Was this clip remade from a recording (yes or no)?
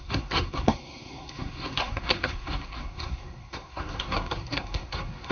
yes